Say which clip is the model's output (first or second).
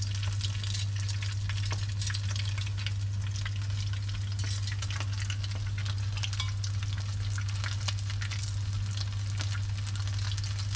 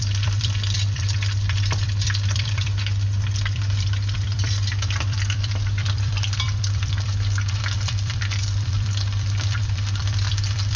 second